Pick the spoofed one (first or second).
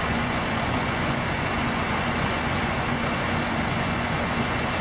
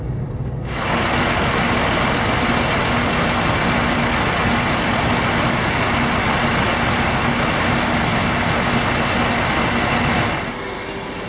first